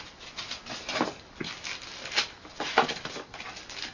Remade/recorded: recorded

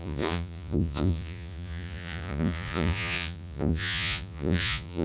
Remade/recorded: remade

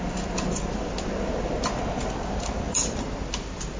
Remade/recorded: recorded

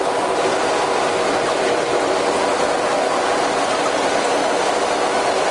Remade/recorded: recorded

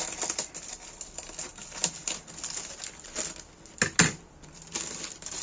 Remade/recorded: recorded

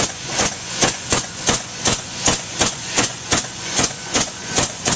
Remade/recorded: remade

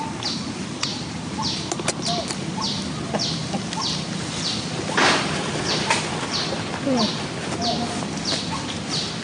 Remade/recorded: remade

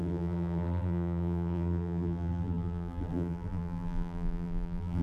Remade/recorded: remade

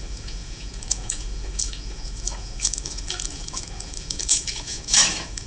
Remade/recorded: remade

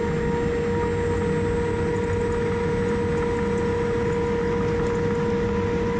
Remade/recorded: recorded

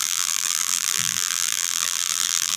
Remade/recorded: remade